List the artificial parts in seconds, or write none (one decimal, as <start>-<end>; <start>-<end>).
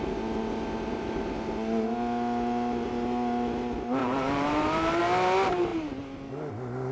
4.0-5.0